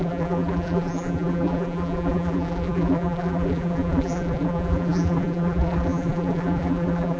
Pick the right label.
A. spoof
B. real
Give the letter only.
A